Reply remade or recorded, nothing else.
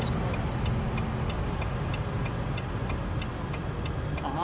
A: recorded